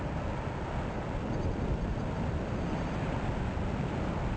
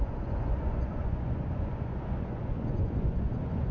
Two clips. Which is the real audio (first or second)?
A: first